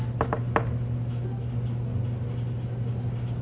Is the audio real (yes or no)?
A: yes